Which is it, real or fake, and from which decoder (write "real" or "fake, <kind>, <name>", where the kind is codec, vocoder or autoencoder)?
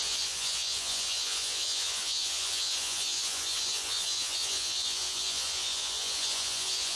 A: fake, vocoder, Vocos